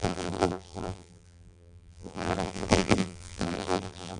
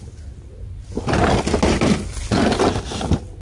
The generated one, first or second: first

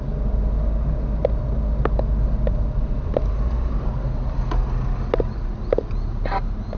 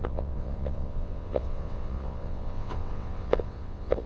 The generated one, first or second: second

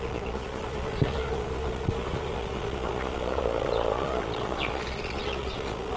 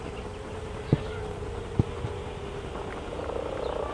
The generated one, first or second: first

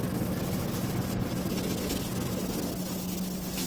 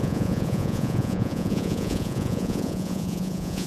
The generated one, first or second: second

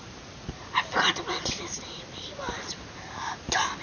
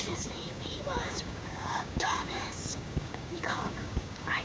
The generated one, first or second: second